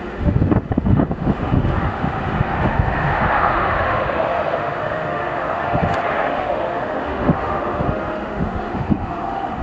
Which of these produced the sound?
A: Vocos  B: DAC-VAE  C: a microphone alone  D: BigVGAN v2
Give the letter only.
B